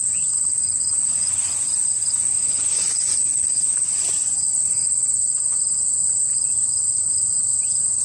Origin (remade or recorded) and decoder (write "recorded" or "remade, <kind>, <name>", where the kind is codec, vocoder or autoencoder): remade, vocoder, Vocos